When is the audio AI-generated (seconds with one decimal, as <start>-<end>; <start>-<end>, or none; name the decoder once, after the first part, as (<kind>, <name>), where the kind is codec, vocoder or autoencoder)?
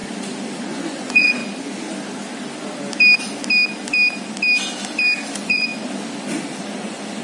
0.6-1.4 (vocoder, Vocos); 5.3-5.7; 6.6-7.2